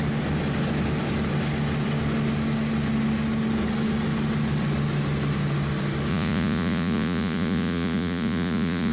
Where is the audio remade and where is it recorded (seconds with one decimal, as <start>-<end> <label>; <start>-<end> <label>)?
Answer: 0.0-6.1 recorded; 6.1-8.9 remade